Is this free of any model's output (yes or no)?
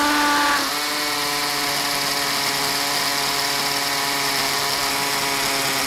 yes